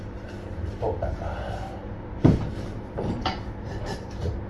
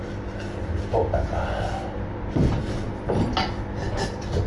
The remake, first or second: first